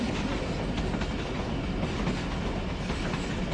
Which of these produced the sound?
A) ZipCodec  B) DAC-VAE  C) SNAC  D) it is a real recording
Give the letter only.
D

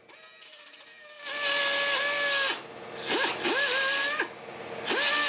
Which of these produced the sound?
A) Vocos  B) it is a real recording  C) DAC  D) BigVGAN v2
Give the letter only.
B